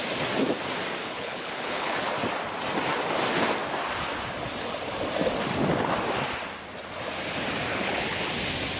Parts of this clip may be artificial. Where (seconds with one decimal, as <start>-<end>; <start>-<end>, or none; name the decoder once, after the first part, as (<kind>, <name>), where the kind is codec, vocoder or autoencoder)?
1.0-2.1 (codec, HILCodec); 7.7-8.2